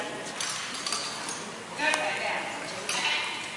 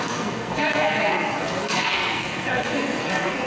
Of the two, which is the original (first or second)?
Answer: first